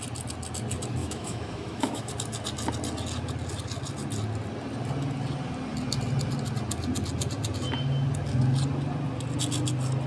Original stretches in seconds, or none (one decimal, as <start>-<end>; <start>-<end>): 0.0-1.0; 2.1-10.1